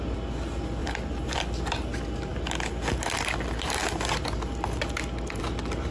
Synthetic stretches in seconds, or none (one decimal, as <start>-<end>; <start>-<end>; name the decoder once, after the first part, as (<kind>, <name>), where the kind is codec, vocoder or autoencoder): 0.8-1.6 (vocoder, BigVGAN v2)